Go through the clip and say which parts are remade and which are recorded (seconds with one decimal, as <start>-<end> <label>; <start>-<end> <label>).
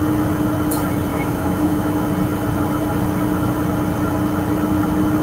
0.0-1.1 recorded; 1.1-1.9 remade; 1.9-5.2 recorded